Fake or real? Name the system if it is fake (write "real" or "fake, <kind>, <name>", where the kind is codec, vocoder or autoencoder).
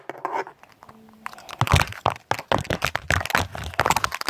real